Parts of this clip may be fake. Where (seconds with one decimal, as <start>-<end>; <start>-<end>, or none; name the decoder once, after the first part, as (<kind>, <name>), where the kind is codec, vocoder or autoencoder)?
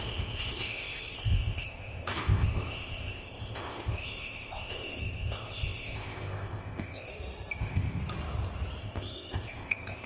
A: 0.0-7.1 (codec, ZipCodec); 7.6-8.0; 8.8-10.1